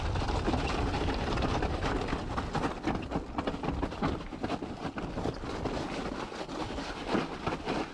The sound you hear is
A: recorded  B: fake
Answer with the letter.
A